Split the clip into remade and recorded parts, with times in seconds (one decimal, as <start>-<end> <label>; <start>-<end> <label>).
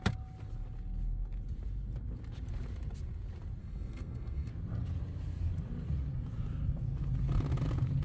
0.0-3.6 recorded; 3.6-4.5 remade; 4.5-8.0 recorded